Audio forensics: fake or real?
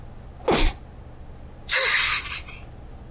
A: real